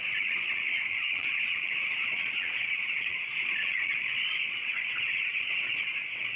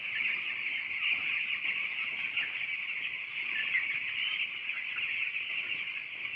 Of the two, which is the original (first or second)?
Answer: second